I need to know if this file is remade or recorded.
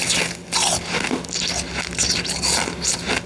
recorded